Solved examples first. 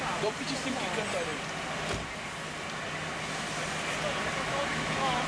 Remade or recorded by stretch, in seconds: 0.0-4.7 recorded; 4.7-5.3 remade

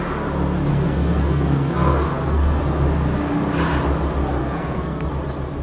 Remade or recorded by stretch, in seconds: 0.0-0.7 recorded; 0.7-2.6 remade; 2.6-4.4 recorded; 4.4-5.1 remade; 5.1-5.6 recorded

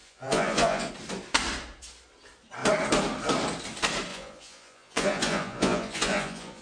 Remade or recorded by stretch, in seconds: 0.0-0.9 remade; 0.9-4.1 recorded; 4.1-6.6 remade